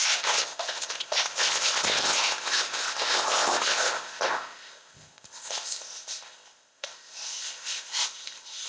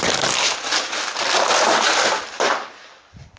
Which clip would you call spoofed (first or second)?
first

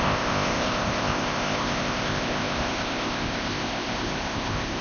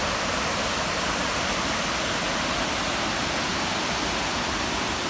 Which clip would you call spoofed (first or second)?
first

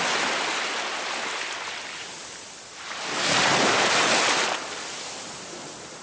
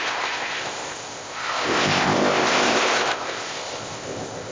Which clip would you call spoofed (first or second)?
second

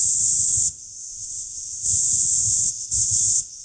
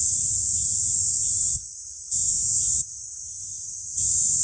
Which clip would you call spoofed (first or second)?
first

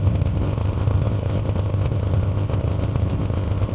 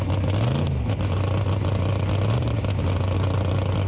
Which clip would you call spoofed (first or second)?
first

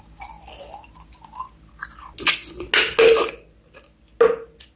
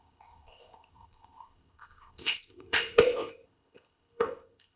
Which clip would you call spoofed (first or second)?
second